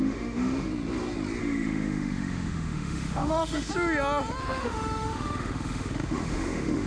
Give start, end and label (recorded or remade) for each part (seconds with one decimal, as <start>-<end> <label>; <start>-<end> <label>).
0.0-0.7 remade; 0.7-1.4 recorded; 1.4-3.7 remade; 3.7-4.4 recorded; 4.4-6.9 remade